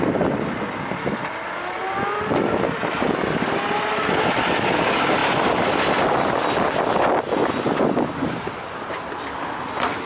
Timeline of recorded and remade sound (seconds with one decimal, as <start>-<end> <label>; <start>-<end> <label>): 0.0-10.1 recorded